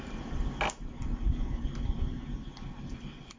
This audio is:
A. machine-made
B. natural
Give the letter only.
B